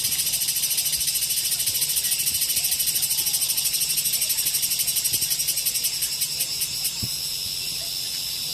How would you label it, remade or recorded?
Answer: recorded